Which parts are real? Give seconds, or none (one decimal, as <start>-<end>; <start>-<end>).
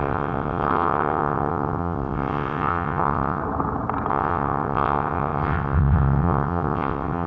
3.4-4.1